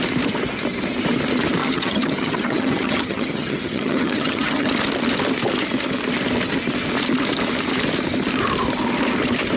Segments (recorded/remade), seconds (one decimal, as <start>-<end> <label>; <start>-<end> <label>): 0.0-1.6 recorded; 1.6-4.7 remade; 4.7-9.6 recorded